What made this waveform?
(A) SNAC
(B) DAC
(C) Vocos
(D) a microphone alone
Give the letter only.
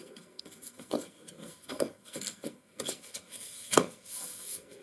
A